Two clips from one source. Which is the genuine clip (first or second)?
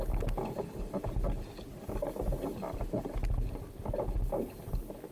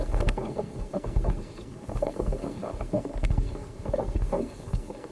first